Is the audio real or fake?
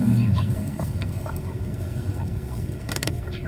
fake